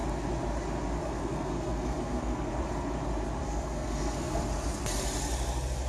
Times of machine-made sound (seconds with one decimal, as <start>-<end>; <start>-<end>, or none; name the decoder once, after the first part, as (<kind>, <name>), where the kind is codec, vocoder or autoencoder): 1.0-2.5 (codec, SNAC); 3.4-4.4